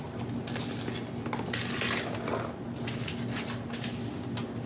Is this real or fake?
real